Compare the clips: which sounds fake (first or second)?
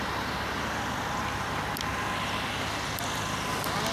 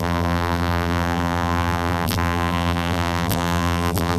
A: second